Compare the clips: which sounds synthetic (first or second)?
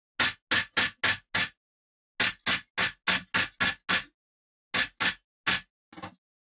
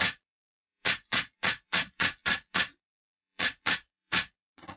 second